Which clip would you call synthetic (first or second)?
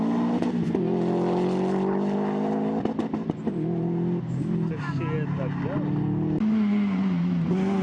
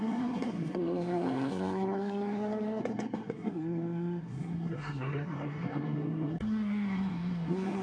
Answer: second